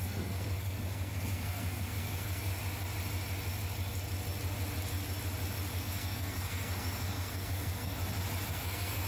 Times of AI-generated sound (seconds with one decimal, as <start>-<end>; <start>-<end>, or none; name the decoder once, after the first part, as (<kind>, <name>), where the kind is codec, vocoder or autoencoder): 0.0-2.5 (codec, SNAC); 5.8-8.0; 8.5-9.1